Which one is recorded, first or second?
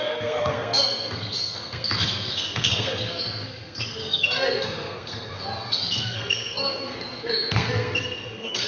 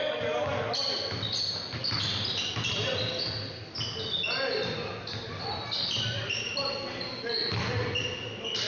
second